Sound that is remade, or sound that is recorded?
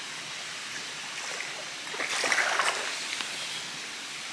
recorded